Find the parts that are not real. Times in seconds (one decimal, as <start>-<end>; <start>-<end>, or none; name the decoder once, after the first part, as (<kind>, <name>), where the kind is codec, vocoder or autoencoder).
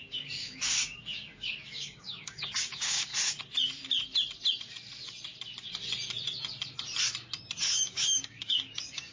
0.0-3.1 (codec, DAC); 7.6-9.1